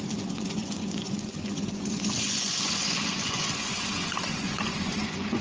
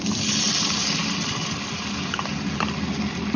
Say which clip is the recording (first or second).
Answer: second